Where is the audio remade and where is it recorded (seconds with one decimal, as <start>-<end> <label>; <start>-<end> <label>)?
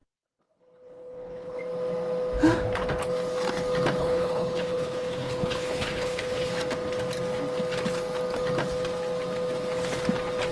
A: 0.0-1.6 remade; 1.6-4.0 recorded; 4.0-6.5 remade; 6.5-10.5 recorded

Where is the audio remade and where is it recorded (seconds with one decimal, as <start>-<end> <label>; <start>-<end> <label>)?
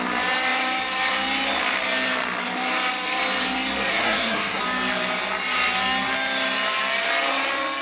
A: 0.0-3.9 recorded; 3.9-4.6 remade; 4.6-7.8 recorded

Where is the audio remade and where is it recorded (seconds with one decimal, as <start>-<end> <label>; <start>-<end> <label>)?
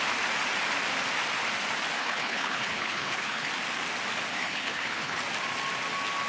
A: 0.0-2.0 recorded; 2.0-3.5 remade; 3.5-4.3 recorded; 4.3-5.2 remade; 5.2-6.3 recorded